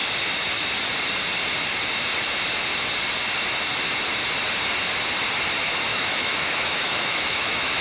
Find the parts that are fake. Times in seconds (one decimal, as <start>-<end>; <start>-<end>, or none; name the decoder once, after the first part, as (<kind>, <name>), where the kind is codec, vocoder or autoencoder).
5.9-7.8 (autoencoder, DAC-VAE)